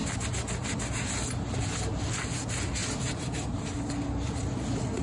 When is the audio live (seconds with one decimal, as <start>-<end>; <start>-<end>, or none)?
0.0-2.8; 3.9-5.0